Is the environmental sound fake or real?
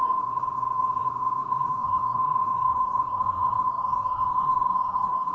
fake